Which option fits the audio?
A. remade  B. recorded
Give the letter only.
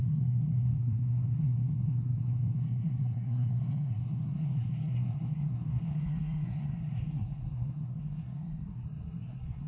A